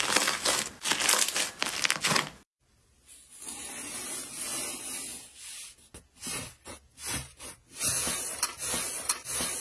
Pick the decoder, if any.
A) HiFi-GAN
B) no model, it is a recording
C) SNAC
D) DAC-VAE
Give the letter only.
B